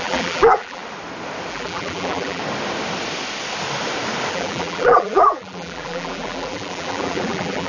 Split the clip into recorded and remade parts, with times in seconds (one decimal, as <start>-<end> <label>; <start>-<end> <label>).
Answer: 0.0-0.8 remade; 0.8-1.5 recorded; 1.5-2.4 remade; 2.4-4.3 recorded; 4.3-7.7 remade